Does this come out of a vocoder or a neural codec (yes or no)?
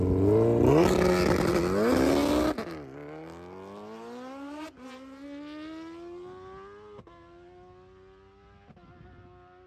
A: no